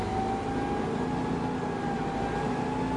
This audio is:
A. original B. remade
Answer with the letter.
A